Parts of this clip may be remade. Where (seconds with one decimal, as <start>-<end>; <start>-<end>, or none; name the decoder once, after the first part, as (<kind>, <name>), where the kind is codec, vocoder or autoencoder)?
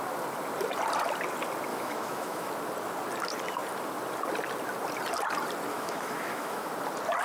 1.7-2.5 (autoencoder, DAC-VAE); 5.7-6.7